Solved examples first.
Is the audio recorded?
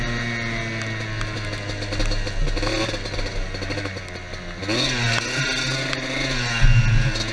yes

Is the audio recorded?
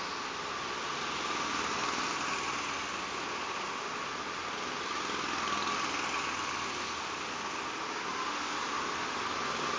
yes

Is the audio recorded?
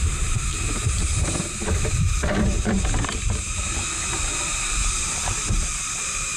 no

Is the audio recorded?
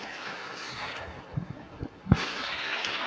no